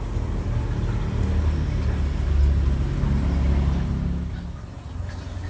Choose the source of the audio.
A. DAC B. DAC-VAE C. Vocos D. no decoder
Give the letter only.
D